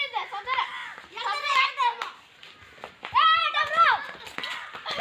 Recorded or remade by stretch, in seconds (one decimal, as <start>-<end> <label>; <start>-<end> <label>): 0.0-5.0 recorded